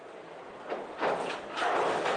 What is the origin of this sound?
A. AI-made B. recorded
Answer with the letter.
B